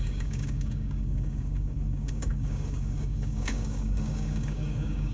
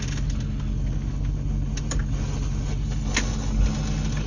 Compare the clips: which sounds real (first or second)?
second